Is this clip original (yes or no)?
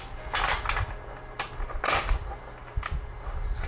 yes